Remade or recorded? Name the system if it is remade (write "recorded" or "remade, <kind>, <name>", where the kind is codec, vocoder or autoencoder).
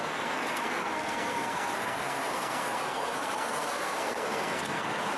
remade, codec, SNAC